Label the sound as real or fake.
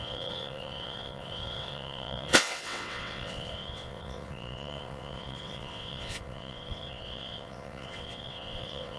fake